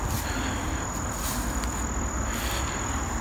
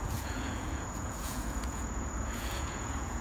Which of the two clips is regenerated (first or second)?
second